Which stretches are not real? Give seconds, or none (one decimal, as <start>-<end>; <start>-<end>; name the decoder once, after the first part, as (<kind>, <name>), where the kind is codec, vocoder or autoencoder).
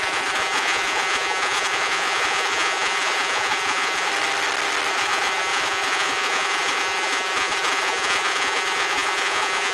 0.0-4.1 (vocoder, Vocos); 4.9-9.7